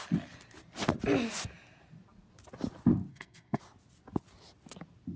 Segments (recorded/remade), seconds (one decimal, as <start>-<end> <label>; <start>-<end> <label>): 0.0-3.1 recorded; 3.1-3.6 remade; 3.6-5.2 recorded